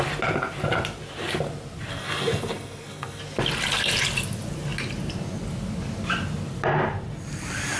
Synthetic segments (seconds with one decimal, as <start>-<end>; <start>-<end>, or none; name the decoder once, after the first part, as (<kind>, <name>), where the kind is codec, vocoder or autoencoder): 1.9-3.2 (codec, SNAC)